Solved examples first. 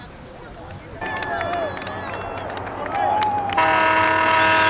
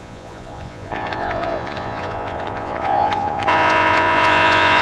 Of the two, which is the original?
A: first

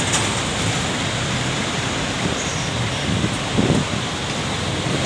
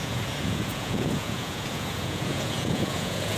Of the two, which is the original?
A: first